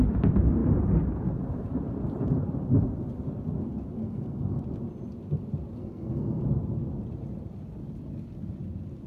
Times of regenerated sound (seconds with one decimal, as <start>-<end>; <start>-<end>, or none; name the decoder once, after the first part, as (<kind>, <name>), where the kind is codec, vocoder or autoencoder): 4.0-4.6 (codec, SNAC); 5.8-6.4